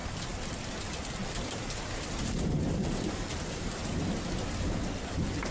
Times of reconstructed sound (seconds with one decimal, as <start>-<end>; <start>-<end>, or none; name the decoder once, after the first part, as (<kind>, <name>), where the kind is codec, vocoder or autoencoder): 0.0-0.7 (vocoder, BigVGAN v2); 1.2-3.7